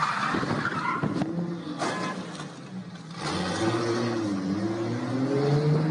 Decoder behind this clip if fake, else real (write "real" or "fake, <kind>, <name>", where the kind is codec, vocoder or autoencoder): real